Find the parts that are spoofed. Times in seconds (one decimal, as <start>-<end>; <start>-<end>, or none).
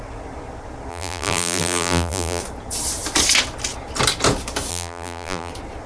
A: 0.9-2.4; 4.7-5.5